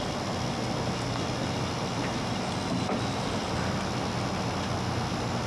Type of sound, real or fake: real